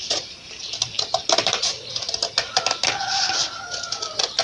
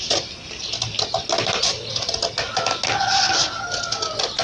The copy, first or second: first